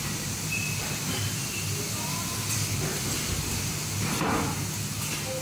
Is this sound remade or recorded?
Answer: recorded